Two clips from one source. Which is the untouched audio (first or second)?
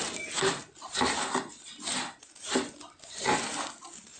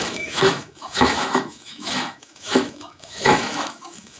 first